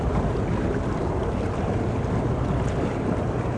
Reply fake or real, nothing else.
real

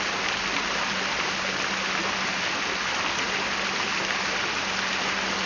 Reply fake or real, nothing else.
real